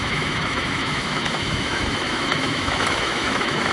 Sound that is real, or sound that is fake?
fake